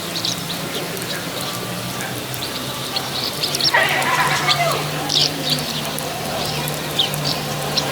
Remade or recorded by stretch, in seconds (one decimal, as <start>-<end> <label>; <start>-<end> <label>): 0.0-7.9 remade